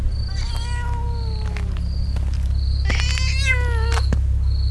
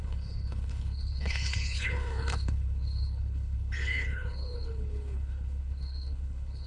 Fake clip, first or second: second